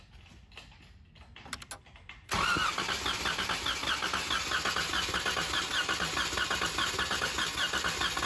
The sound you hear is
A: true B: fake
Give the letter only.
A